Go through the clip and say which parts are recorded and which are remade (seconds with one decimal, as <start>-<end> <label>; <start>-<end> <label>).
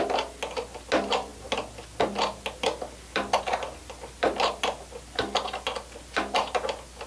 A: 0.0-7.1 recorded